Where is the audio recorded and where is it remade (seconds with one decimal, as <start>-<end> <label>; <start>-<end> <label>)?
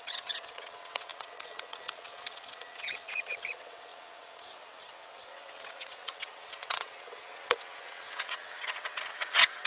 0.0-9.7 remade